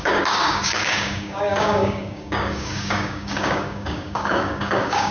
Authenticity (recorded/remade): remade